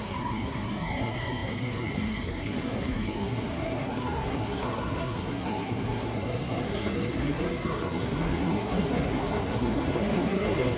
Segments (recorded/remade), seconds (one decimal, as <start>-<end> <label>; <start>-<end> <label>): 0.0-10.8 remade